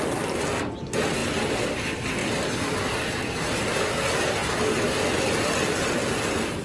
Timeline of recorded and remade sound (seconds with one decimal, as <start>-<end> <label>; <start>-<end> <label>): 0.0-1.2 recorded; 1.2-1.8 remade; 1.8-2.2 recorded; 2.2-3.9 remade; 3.9-4.4 recorded; 4.4-5.2 remade; 5.2-6.6 recorded